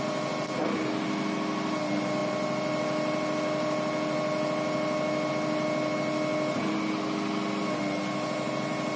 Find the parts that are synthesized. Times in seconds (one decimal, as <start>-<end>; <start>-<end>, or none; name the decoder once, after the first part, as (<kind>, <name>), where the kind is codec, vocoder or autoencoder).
none